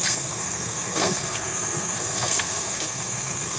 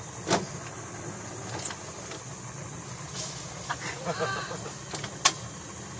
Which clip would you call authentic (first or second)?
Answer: second